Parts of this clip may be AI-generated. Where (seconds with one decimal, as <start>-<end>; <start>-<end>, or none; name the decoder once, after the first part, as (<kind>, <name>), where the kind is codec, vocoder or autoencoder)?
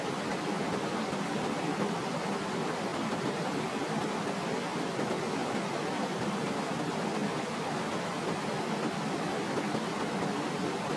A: 2.9-3.6 (vocoder, BigVGAN v2); 5.4-6.8